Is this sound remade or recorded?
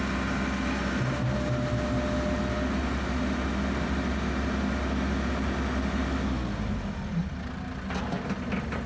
recorded